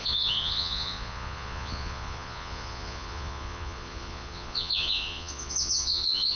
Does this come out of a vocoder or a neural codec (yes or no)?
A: yes